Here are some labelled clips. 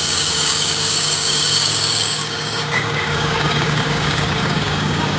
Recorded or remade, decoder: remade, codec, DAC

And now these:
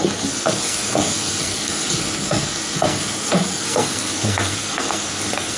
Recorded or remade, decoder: remade, codec, SNAC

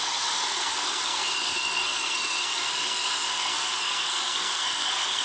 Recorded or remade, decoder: remade, codec, SNAC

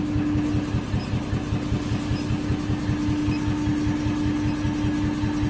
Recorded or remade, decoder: recorded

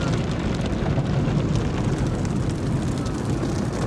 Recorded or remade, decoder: recorded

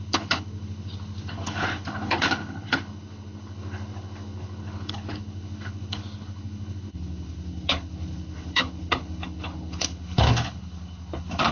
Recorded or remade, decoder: remade, codec, HILCodec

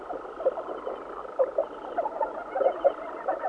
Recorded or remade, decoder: recorded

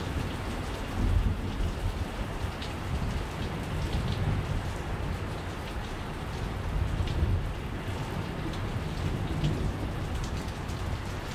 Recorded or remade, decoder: recorded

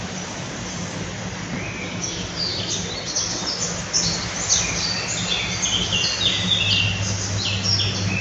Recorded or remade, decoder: recorded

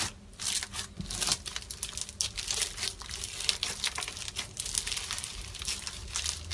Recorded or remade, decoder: recorded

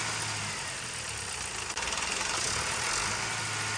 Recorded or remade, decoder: recorded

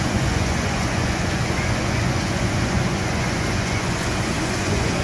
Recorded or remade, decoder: remade, vocoder, Vocos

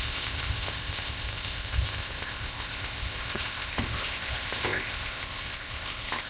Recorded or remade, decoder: remade, codec, ZipCodec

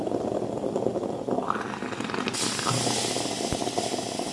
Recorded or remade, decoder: recorded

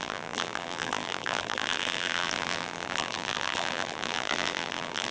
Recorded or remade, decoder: remade, vocoder, BigVGAN v2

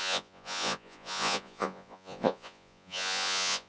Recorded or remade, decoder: remade, vocoder, Vocos